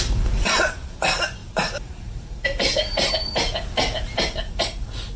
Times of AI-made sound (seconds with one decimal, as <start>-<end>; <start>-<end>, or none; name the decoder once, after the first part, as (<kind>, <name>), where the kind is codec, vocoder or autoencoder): 1.4-3.1 (vocoder, BigVGAN v2)